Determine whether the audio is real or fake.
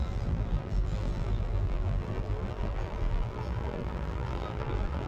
fake